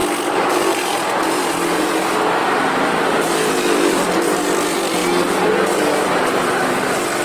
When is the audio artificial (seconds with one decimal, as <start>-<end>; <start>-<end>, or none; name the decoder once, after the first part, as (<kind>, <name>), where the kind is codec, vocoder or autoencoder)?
1.5-5.0 (vocoder, BigVGAN v2); 6.1-7.2